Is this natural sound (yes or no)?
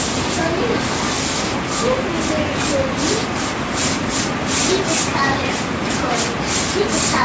yes